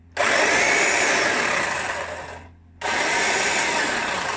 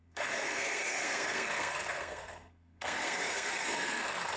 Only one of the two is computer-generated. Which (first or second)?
second